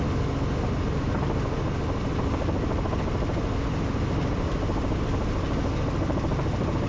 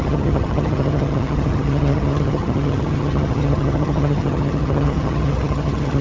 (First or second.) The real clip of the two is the first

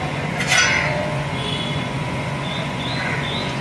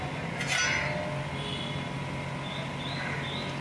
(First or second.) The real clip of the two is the second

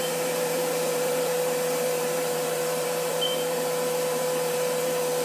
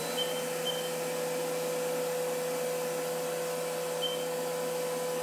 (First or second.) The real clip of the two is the second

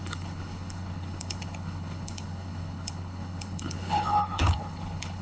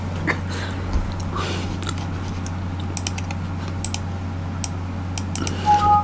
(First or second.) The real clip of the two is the second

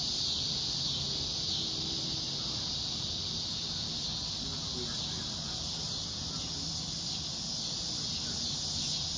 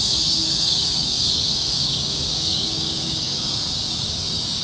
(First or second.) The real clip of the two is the first